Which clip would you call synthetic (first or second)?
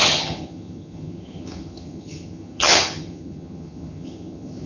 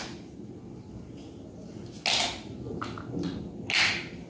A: first